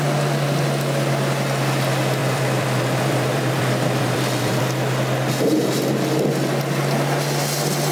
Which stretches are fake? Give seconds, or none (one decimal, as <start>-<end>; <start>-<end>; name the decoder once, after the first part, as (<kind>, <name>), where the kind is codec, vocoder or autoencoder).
2.2-4.6 (vocoder, BigVGAN v2)